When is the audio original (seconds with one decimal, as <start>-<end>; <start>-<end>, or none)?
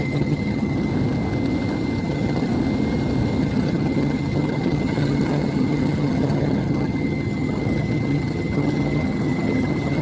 0.9-2.0; 2.5-3.4